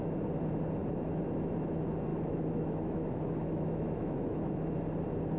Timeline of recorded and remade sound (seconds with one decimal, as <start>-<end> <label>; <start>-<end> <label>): 0.0-2.1 recorded; 2.1-4.5 remade; 4.5-5.4 recorded